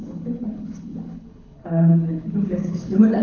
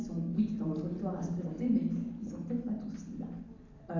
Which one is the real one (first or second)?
second